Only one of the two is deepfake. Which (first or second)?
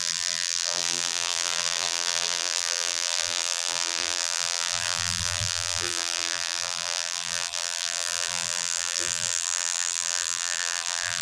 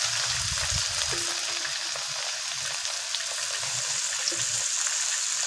first